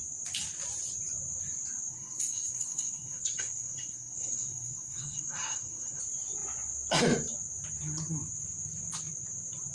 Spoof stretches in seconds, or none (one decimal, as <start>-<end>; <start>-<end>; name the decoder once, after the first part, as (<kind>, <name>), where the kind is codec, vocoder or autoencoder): 1.9-6.0 (codec, SNAC)